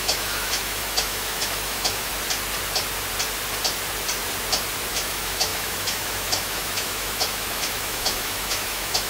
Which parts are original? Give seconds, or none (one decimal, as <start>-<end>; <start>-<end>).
2.1-4.9